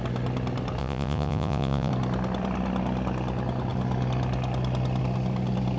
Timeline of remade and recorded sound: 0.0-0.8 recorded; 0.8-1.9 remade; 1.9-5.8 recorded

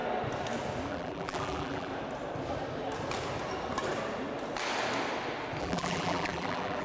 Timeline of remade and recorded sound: 0.0-0.9 recorded; 0.9-1.9 remade; 1.9-5.6 recorded; 5.6-6.8 remade

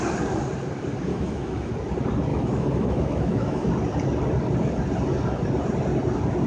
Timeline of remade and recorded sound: 0.0-1.1 recorded; 1.1-1.7 remade; 1.7-2.3 recorded; 2.3-3.7 remade; 3.7-6.5 recorded

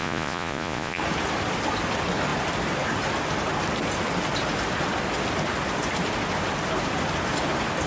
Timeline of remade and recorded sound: 0.0-1.0 remade; 1.0-7.9 recorded

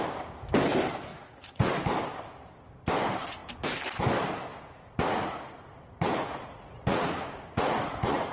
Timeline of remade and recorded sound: 0.0-1.1 recorded; 1.1-1.8 remade; 1.8-4.5 recorded; 4.5-8.3 remade

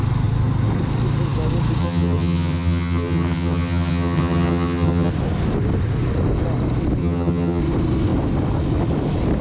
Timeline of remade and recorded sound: 0.0-1.8 recorded; 1.8-5.1 remade; 5.1-7.0 recorded; 7.0-7.6 remade; 7.6-9.4 recorded

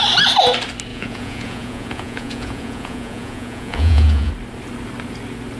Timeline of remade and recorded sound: 0.0-0.9 recorded; 0.9-4.3 remade; 4.3-5.6 recorded